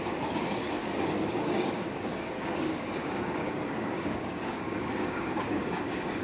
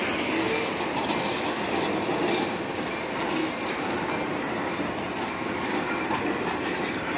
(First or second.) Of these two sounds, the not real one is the first